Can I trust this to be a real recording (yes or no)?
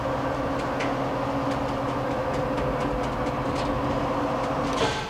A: yes